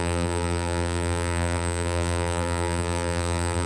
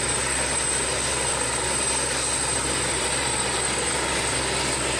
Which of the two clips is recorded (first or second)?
second